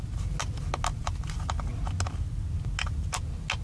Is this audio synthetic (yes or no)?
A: no